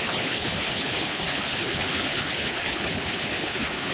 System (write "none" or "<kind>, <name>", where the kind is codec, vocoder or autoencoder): codec, HILCodec